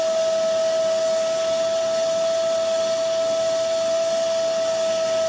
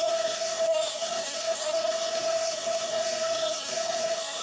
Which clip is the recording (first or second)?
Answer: first